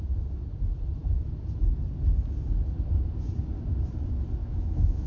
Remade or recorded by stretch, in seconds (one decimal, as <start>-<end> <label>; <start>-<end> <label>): 0.0-4.4 recorded; 4.4-5.1 remade